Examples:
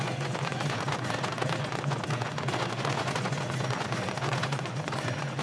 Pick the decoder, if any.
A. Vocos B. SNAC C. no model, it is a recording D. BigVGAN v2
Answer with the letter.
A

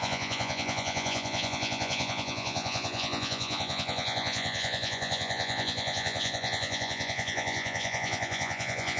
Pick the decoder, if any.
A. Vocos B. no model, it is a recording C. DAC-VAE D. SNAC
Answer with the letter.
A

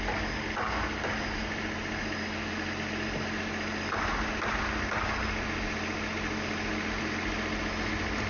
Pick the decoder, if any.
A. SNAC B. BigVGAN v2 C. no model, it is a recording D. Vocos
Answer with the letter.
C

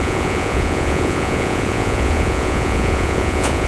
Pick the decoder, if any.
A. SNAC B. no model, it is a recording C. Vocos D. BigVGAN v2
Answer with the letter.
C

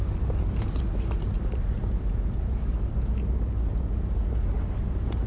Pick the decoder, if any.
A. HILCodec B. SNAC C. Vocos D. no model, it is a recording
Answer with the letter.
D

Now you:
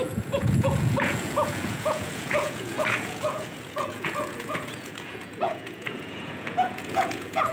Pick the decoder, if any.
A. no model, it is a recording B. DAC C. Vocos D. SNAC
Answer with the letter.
C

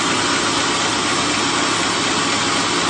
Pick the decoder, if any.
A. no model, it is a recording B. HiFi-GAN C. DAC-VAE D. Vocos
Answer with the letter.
A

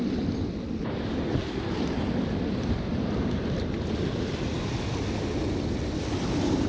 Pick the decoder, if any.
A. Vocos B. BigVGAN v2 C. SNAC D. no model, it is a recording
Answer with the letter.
D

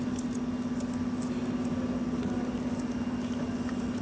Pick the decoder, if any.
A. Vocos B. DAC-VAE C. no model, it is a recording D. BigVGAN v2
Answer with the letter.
C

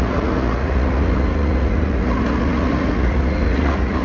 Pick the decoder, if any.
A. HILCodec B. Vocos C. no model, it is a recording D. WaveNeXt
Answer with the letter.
B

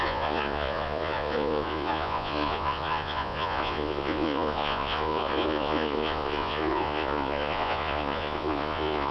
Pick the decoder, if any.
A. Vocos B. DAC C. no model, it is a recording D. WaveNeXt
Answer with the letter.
A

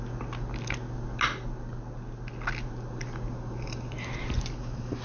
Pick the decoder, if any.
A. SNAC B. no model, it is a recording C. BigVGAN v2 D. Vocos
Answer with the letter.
B